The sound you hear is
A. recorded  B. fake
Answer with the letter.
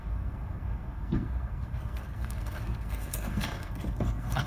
B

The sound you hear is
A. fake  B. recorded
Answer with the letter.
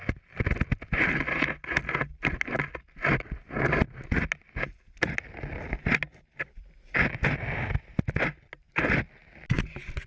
B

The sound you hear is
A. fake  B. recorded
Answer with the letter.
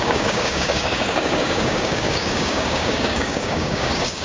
A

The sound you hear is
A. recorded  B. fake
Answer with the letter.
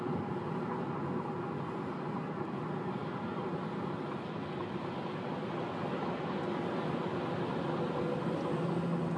A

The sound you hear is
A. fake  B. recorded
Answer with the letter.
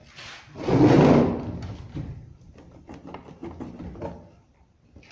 B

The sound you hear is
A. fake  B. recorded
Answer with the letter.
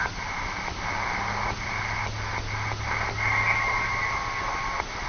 B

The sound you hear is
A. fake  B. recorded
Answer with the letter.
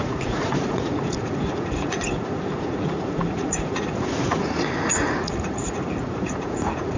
A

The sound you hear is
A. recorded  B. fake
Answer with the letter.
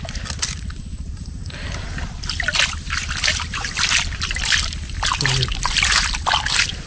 A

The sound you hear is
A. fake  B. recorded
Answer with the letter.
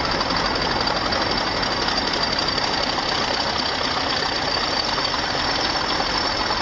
B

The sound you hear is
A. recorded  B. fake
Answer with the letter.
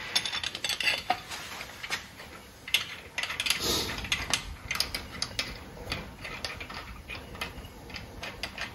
A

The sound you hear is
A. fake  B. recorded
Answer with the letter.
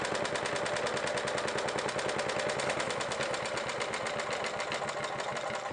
B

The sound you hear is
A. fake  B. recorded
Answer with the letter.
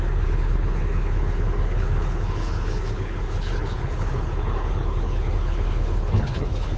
A